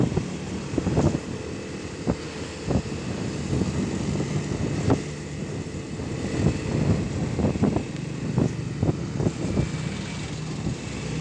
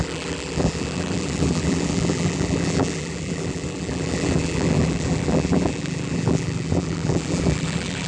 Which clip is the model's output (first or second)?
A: second